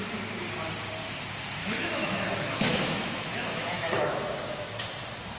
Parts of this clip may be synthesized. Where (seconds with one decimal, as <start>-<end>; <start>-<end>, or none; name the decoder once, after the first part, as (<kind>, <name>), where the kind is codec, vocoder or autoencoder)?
1.6-4.8 (autoencoder, DAC-VAE)